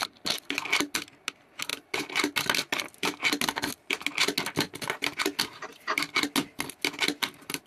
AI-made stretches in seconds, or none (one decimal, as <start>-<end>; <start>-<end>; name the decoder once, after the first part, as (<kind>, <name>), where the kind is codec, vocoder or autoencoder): none